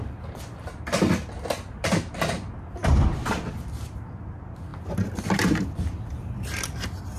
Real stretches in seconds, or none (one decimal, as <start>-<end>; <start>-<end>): 0.0-7.2